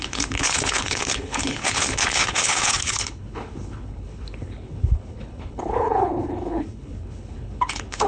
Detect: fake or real fake